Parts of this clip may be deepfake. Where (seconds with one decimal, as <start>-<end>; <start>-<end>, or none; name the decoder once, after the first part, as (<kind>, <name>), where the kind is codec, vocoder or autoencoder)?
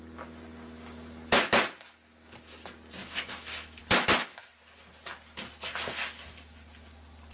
3.0-3.8 (autoencoder, DAC-VAE)